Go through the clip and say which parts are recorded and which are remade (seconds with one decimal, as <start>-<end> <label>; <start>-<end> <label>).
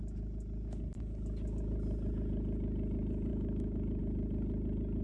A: 0.0-3.3 recorded; 3.3-4.0 remade; 4.0-5.0 recorded